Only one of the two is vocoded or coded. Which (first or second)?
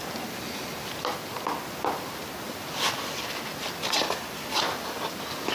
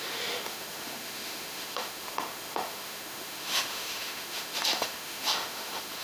second